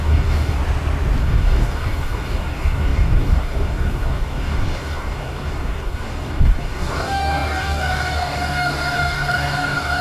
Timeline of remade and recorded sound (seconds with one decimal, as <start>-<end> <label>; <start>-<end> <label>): 0.0-0.6 remade; 0.6-1.2 recorded; 1.2-10.0 remade